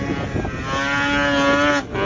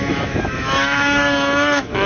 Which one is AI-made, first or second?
second